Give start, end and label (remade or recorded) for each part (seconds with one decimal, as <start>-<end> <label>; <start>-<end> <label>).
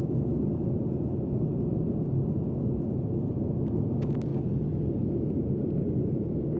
0.0-6.6 recorded